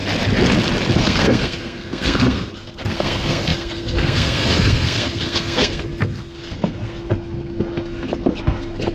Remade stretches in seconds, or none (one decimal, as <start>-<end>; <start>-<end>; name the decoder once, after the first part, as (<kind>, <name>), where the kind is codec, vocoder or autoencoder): 1.0-8.9 (codec, SNAC)